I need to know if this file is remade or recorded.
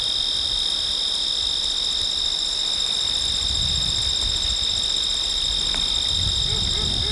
recorded